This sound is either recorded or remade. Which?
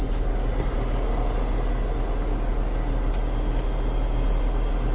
recorded